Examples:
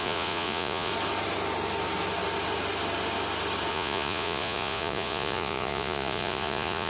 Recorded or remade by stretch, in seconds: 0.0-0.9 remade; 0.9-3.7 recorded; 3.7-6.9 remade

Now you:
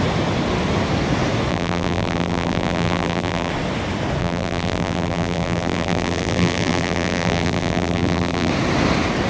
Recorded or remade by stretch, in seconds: 0.0-1.5 recorded; 1.5-3.5 remade; 3.5-4.2 recorded; 4.2-8.5 remade; 8.5-9.3 recorded

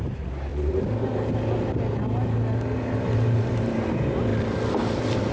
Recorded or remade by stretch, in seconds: 0.0-0.5 remade; 0.5-3.0 recorded; 3.0-4.3 remade; 4.3-5.3 recorded

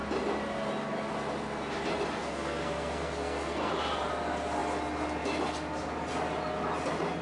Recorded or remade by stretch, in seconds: 0.0-2.2 recorded; 2.2-3.7 remade; 3.7-7.2 recorded

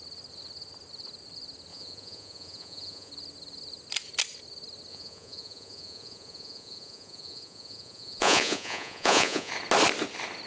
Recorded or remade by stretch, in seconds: 0.0-1.7 recorded; 1.7-3.1 remade; 3.1-4.9 recorded; 4.9-9.5 remade; 9.5-10.5 recorded

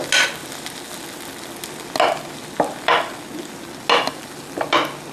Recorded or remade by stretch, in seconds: 0.0-5.1 recorded